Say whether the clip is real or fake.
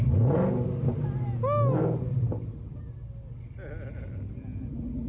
real